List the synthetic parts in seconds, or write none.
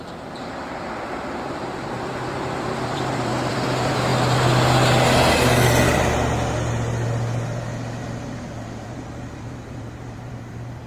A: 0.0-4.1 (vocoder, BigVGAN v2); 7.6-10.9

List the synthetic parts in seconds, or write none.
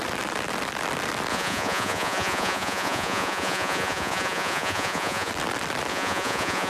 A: 1.3-5.3 (vocoder, Vocos); 5.9-6.7